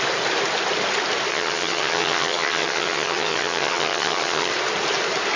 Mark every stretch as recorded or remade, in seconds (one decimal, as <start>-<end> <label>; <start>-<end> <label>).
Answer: 0.0-1.3 recorded; 1.3-4.5 remade; 4.5-5.4 recorded